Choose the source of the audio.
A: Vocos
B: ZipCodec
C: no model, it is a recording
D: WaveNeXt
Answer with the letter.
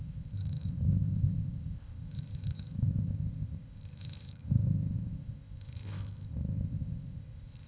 B